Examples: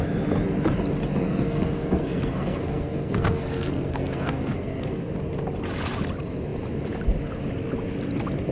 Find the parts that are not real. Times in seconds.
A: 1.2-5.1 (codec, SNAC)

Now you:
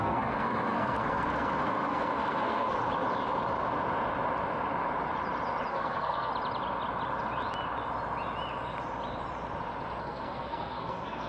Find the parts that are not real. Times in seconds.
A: 0.0-2.8 (codec, SNAC); 5.7-6.3; 10.0-11.3